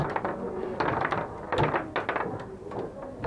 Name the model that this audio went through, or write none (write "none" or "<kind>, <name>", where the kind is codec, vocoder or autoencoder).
none